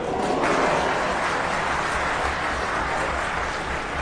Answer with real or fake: real